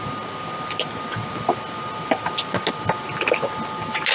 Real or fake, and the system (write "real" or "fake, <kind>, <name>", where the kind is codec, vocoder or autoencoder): real